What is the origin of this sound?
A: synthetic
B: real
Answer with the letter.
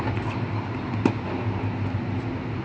B